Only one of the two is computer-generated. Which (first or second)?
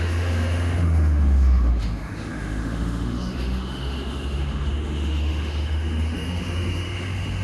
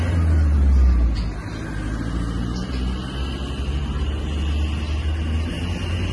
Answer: first